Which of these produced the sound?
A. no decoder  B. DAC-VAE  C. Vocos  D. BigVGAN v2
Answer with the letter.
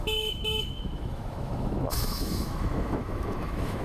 B